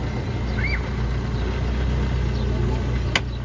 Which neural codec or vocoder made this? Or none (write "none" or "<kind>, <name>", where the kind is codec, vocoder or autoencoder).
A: none